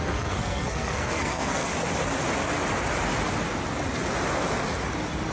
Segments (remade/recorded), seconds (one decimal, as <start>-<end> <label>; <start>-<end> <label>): 0.0-1.7 remade; 1.7-5.3 recorded